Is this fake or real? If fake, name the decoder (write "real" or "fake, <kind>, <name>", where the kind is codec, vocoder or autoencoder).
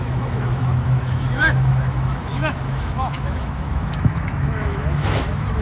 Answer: fake, autoencoder, DAC-VAE